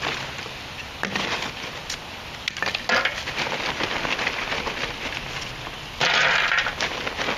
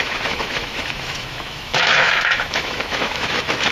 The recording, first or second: first